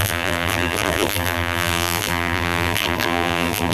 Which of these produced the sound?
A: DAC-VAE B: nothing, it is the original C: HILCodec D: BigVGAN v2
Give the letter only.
D